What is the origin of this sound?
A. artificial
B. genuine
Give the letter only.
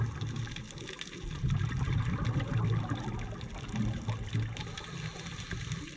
B